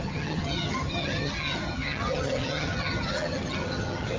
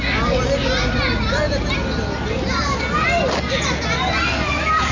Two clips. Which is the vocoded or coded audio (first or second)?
first